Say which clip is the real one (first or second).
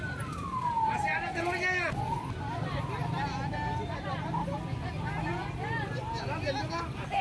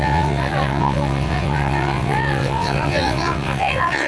first